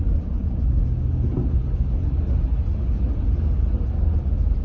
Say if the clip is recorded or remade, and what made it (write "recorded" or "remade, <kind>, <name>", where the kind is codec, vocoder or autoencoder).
recorded